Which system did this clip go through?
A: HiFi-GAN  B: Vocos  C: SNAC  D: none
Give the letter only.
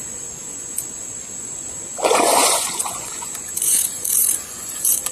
B